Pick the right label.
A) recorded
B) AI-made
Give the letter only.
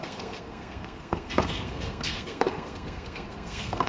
B